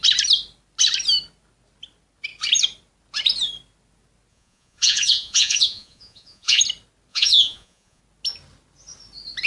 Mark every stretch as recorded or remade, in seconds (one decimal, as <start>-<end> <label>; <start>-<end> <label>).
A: 0.0-4.3 recorded; 4.3-6.6 remade; 6.6-7.1 recorded; 7.1-8.0 remade; 8.0-9.5 recorded